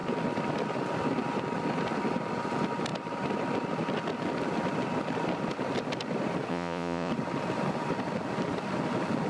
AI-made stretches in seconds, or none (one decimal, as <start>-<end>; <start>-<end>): 6.5-7.1